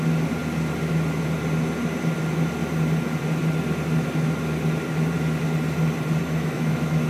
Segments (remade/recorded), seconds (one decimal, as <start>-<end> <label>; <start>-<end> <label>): 0.0-6.2 recorded; 6.2-7.1 remade